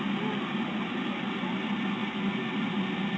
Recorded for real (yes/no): yes